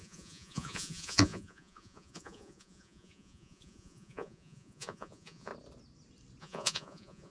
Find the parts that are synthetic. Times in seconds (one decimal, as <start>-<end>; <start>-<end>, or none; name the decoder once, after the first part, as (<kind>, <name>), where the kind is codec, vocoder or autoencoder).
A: 0.0-5.5 (vocoder, Vocos); 6.4-7.3

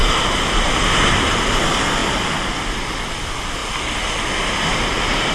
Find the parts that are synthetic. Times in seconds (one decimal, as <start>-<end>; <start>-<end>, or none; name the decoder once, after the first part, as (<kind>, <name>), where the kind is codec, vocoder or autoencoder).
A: none

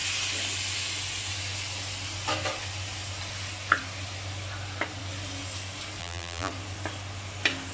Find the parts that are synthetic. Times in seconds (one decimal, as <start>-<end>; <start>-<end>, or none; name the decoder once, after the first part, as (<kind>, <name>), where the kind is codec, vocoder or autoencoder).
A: 6.0-6.5 (vocoder, BigVGAN v2)

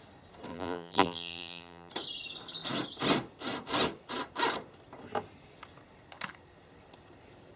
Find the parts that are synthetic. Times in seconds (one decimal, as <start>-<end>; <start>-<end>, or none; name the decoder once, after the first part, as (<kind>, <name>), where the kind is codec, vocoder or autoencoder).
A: 0.5-1.9 (vocoder, BigVGAN v2)

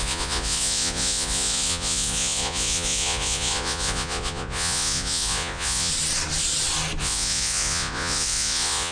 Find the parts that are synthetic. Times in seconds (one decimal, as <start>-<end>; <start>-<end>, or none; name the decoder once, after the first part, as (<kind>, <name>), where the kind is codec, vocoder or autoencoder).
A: 0.0-5.9 (vocoder, Vocos); 7.0-8.9

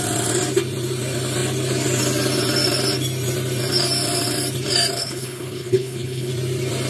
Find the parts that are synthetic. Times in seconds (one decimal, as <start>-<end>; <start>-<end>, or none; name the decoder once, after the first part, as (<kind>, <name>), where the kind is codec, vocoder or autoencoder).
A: 5.0-6.3 (codec, HILCodec)

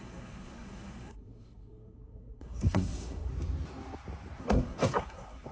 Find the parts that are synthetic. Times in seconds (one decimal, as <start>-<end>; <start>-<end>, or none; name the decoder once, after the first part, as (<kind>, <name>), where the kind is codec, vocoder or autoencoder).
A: 0.0-3.3 (codec, SNAC); 4.4-5.5

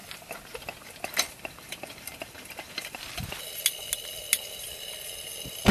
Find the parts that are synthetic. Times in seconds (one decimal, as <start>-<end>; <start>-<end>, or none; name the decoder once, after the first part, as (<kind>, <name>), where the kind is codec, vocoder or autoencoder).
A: 0.0-3.4 (vocoder, BigVGAN v2)